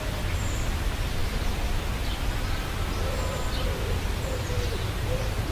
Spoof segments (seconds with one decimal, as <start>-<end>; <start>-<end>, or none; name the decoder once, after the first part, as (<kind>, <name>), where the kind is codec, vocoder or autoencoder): none